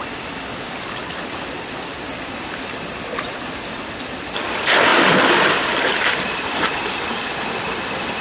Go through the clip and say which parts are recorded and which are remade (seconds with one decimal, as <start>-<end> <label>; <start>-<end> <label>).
0.0-4.9 recorded; 4.9-7.7 remade; 7.7-8.2 recorded